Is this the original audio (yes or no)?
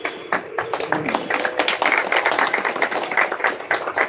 yes